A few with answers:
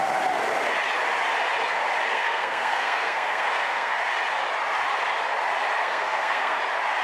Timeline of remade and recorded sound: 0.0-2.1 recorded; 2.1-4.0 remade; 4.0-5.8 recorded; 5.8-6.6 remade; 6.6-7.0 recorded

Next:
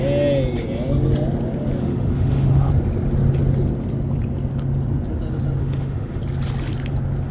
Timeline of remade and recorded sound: 0.0-1.8 recorded; 1.8-2.7 remade; 2.7-5.6 recorded; 5.6-6.2 remade; 6.2-7.3 recorded

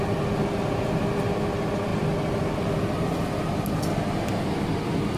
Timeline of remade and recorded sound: 0.0-5.2 recorded